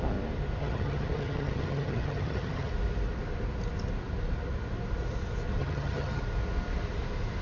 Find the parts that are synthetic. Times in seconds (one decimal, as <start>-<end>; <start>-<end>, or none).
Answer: 0.6-2.7; 5.6-6.2

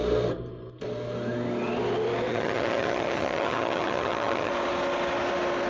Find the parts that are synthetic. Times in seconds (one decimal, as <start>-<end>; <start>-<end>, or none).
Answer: 2.3-4.5

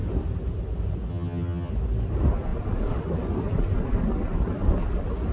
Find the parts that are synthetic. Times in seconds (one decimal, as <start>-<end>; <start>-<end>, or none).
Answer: 1.1-1.7

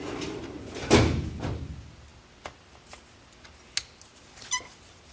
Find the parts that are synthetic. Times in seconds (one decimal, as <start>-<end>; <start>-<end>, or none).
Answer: none